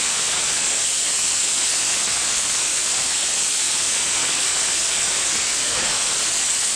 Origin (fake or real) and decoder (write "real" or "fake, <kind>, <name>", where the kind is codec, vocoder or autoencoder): fake, codec, SNAC